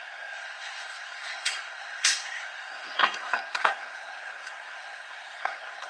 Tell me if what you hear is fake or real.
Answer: fake